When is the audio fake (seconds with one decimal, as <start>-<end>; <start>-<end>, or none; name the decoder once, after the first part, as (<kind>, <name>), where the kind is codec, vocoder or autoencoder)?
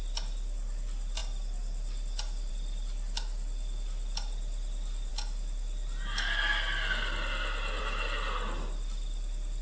none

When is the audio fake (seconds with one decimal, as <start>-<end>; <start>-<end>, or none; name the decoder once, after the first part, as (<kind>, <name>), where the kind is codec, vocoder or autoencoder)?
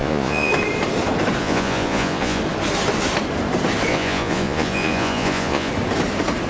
0.0-0.5 (vocoder, Vocos); 1.4-2.4; 3.9-5.7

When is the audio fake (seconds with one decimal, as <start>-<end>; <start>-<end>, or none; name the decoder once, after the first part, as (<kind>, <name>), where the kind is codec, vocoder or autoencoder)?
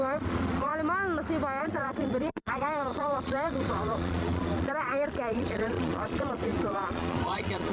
0.0-0.7 (vocoder, Vocos); 1.6-7.7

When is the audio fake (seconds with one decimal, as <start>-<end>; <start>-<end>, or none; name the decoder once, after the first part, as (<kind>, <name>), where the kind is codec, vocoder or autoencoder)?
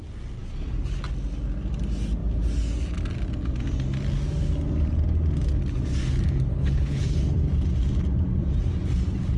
6.5-7.3 (codec, HILCodec)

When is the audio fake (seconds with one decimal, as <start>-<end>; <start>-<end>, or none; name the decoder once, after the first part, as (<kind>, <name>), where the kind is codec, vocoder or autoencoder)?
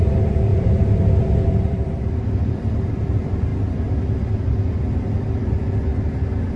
0.0-0.5 (vocoder, BigVGAN v2); 1.2-3.5; 5.2-6.6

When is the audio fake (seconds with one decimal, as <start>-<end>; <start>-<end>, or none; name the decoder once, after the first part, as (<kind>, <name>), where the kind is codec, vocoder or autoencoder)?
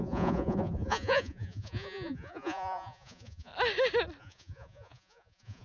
0.0-3.5 (vocoder, Vocos); 4.2-5.6